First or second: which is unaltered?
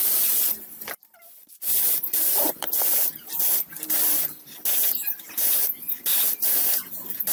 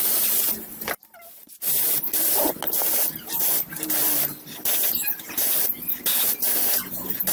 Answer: second